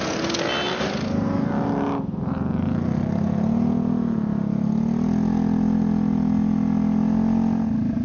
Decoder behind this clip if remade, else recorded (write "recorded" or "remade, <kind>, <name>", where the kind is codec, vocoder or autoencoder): recorded